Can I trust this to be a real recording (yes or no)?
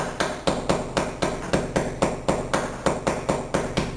yes